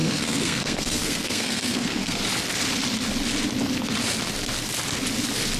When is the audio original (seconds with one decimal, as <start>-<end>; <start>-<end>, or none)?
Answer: 2.2-5.6